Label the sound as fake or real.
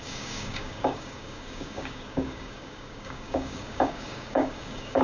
fake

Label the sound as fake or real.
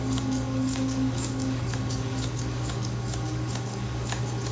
fake